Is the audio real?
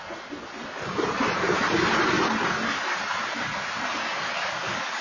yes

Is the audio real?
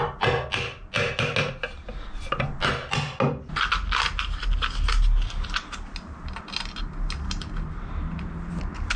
yes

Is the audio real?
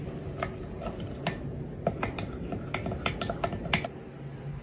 yes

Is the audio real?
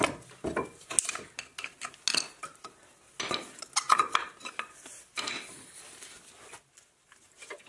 yes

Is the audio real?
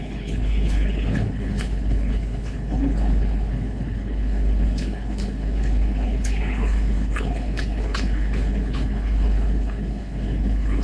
no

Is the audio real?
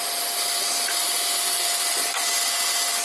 yes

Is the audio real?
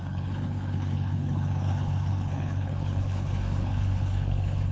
no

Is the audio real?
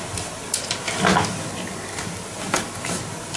yes